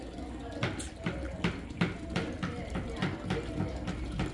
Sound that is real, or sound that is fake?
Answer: real